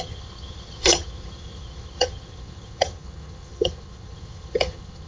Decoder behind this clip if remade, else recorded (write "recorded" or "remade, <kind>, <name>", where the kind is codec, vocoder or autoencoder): remade, vocoder, HiFi-GAN